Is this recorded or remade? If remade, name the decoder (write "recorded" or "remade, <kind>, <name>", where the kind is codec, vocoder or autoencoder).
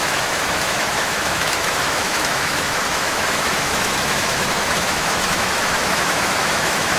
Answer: remade, autoencoder, DAC-VAE